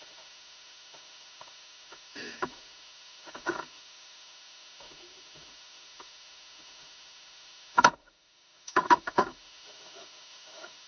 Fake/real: fake